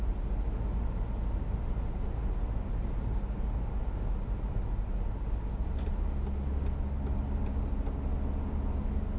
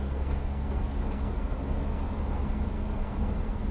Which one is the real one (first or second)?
first